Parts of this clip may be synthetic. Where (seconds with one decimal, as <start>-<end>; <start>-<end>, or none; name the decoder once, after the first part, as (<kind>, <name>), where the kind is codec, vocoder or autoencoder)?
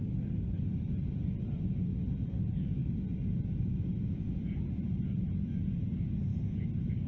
none